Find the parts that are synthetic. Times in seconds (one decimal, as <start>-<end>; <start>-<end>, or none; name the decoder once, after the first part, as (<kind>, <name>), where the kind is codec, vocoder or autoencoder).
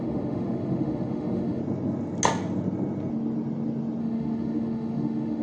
0.0-1.6 (autoencoder, DAC-VAE); 4.0-5.4